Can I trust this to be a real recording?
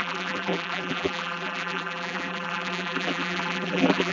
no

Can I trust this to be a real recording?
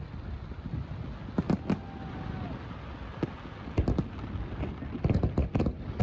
yes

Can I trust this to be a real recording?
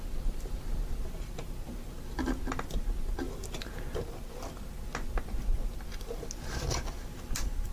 yes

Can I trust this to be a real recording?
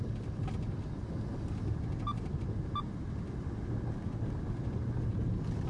yes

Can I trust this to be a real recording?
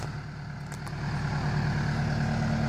yes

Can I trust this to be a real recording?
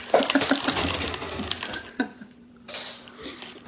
no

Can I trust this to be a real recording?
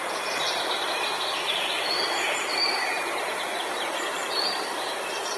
no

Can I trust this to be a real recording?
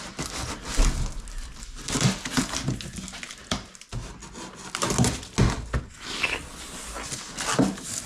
yes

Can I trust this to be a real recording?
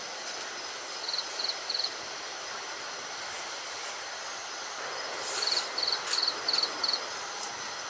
yes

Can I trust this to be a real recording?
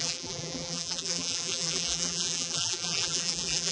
no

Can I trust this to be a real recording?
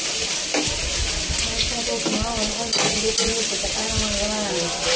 yes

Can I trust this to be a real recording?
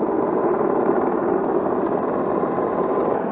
yes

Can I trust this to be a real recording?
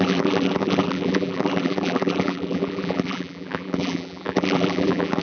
no